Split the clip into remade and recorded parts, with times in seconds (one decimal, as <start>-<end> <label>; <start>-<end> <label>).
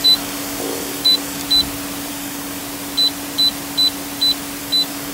0.0-1.4 remade; 1.4-2.1 recorded; 2.1-2.6 remade; 2.6-4.6 recorded; 4.6-5.1 remade